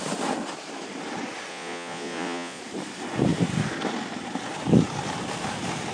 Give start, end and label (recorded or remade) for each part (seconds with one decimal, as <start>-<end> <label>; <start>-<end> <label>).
0.0-1.5 recorded; 1.5-2.6 remade; 2.6-5.9 recorded